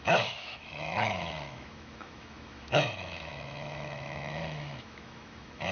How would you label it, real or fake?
fake